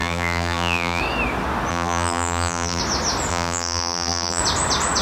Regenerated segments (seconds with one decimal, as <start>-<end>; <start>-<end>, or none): 0.0-1.0; 1.7-2.8; 3.3-4.4